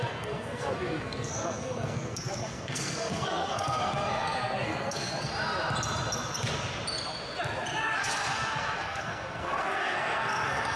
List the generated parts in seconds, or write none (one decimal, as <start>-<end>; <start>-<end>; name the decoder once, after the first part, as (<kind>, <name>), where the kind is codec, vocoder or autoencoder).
0.0-5.3 (codec, SNAC); 8.0-10.8